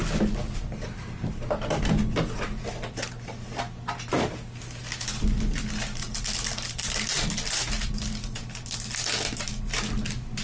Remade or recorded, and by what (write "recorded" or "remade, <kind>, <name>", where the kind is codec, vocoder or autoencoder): recorded